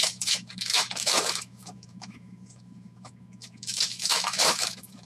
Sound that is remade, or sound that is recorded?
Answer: remade